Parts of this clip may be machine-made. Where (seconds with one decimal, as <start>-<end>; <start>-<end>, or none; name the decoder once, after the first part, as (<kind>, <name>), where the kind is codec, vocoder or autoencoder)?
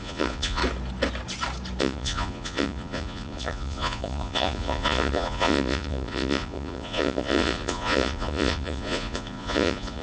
0.0-0.6 (vocoder, Vocos); 1.8-10.0